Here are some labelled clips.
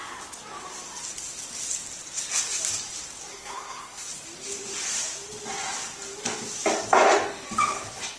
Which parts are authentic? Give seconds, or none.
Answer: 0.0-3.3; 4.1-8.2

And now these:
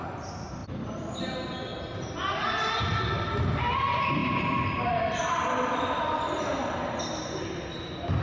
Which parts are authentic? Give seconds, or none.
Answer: 0.0-0.6; 1.2-8.2

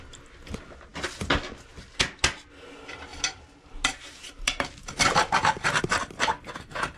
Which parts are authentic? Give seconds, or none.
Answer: 0.0-3.1; 5.8-7.0

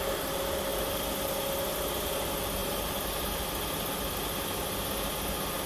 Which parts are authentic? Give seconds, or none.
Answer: 0.0-2.6; 3.4-5.7

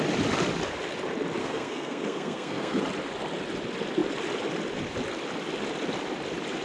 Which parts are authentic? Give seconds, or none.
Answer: 0.0-1.4; 2.8-6.6

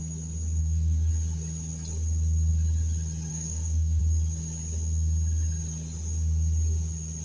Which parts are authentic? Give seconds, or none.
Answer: 0.0-0.6; 1.1-3.3; 4.0-7.2